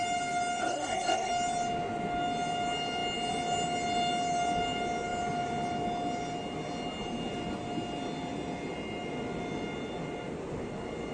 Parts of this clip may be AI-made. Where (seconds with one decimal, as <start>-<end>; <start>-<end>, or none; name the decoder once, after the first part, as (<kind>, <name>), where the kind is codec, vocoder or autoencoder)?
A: 0.6-1.3 (codec, SNAC)

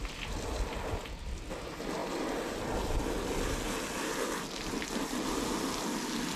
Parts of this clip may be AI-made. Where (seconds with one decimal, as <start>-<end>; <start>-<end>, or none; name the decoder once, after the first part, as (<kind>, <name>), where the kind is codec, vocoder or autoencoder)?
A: none

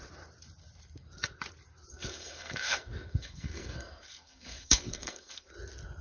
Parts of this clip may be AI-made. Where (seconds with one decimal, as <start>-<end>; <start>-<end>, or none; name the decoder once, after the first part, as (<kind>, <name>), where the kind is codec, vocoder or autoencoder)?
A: 1.9-5.5 (codec, SNAC)

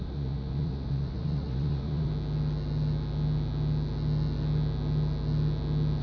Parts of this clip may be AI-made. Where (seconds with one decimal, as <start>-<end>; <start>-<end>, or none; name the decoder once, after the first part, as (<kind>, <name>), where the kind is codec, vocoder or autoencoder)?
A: 0.0-2.1 (vocoder, Vocos)

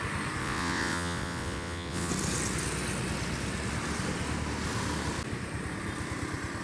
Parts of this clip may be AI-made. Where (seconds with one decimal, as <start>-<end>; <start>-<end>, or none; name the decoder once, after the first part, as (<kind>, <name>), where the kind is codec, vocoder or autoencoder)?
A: 0.4-2.1 (vocoder, WaveNeXt)

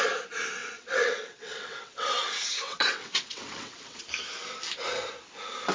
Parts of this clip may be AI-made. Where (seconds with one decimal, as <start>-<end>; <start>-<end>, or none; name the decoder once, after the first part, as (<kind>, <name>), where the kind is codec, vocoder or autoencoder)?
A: 0.6-4.0 (vocoder, WaveNeXt)

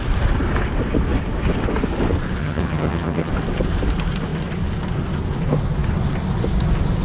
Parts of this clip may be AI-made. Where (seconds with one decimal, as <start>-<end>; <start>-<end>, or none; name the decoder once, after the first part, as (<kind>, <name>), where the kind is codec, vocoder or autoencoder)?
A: 2.4-3.3 (vocoder, HiFi-GAN)